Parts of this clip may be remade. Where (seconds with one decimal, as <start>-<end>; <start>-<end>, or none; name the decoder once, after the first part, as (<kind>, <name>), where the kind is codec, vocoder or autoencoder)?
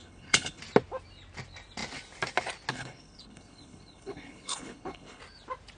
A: 0.0-0.6 (codec, HILCodec); 2.7-5.2